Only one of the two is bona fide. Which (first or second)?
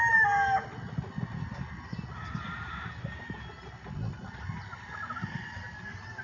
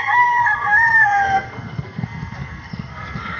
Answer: first